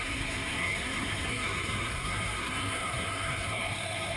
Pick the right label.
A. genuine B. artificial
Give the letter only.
B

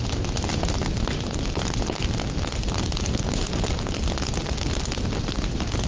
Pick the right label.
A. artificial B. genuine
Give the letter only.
B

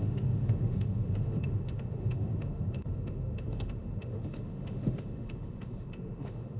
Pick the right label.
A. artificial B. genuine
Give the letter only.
A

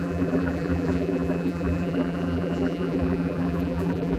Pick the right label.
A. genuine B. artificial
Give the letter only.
B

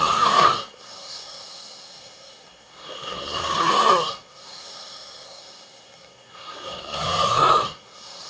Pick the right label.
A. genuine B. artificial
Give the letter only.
B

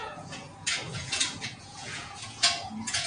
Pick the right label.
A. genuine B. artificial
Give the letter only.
B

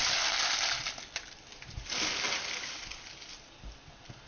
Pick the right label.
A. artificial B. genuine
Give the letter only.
A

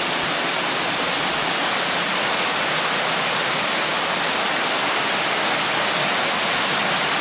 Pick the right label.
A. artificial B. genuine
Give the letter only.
B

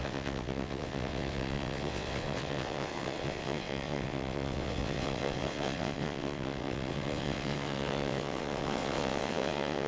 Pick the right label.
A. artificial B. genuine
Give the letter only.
A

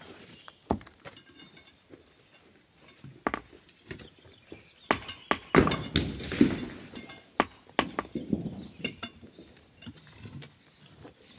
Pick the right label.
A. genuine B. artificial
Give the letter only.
A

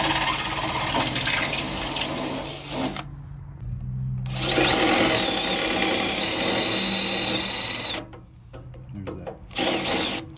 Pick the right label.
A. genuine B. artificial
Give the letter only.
A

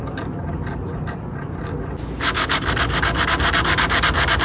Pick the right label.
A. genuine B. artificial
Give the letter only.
A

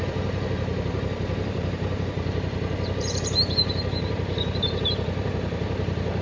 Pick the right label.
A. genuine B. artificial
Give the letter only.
B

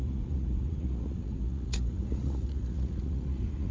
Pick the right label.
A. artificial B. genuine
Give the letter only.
A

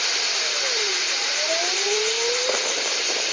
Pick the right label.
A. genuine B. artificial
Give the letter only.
B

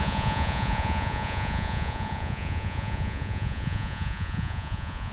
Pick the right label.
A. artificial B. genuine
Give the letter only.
A